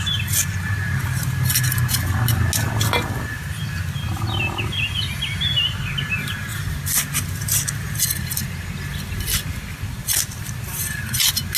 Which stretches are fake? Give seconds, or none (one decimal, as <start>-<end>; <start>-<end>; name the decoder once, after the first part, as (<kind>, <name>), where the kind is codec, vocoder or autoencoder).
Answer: none